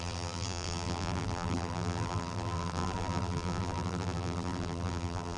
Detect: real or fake fake